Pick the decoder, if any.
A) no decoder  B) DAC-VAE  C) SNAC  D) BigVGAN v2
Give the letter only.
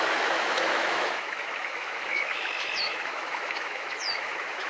B